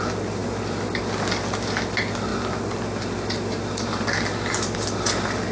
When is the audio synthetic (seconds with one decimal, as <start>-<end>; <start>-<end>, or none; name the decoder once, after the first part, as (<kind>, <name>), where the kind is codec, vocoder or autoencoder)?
none